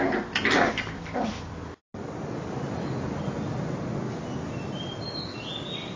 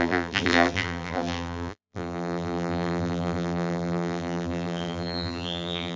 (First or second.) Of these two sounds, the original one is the first